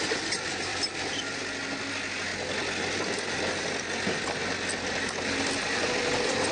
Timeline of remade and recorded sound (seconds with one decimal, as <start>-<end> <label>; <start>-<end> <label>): 0.0-0.7 recorded; 0.7-1.4 remade; 1.4-6.5 recorded